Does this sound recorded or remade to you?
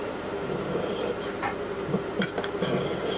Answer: remade